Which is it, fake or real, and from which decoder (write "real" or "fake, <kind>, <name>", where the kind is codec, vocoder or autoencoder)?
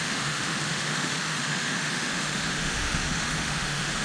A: fake, autoencoder, DAC-VAE